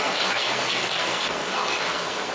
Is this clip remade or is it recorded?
remade